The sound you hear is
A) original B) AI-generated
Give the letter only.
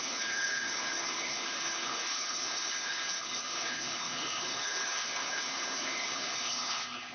B